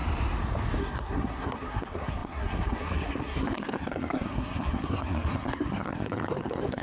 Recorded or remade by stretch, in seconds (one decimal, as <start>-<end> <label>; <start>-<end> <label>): 0.0-0.8 recorded; 0.8-6.8 remade